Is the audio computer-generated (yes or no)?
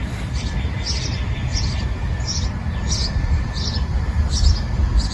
no